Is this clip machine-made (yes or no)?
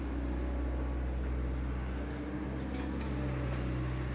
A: no